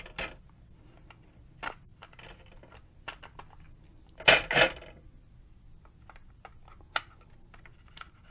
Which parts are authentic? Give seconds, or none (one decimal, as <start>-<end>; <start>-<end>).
0.0-8.3